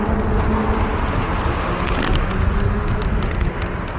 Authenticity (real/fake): real